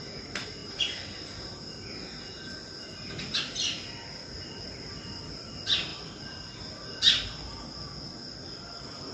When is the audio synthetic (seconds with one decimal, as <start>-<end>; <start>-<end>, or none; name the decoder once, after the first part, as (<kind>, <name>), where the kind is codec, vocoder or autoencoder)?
0.6-1.6 (vocoder, BigVGAN v2); 5.9-6.6